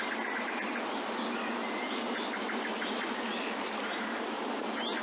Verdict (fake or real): real